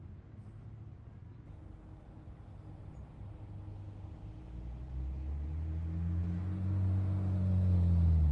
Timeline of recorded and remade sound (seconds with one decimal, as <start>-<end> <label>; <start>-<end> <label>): 0.0-8.3 recorded